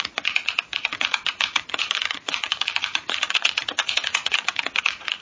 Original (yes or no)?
no